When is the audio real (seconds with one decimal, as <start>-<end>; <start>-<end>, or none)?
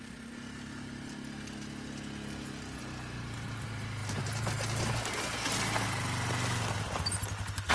0.0-7.7